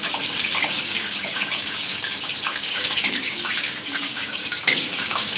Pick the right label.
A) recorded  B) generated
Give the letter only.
B